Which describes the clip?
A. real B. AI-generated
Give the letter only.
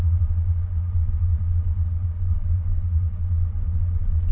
B